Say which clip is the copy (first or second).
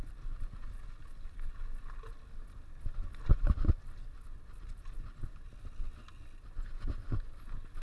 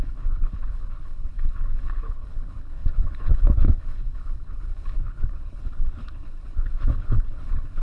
second